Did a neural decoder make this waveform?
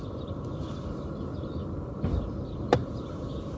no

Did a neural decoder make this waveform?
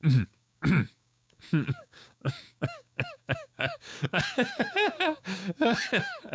yes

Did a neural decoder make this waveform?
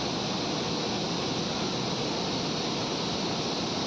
no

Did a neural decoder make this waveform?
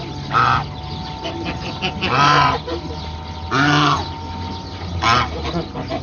no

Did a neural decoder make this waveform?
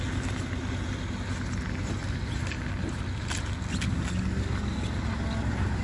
no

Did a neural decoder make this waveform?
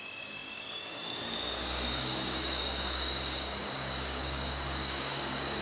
yes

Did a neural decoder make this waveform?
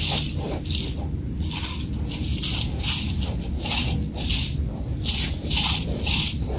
no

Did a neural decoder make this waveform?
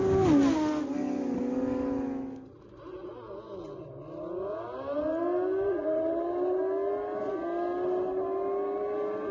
no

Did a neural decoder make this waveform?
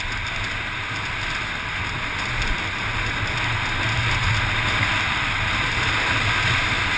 no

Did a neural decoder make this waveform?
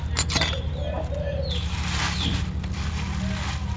no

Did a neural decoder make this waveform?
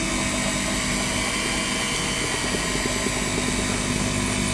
no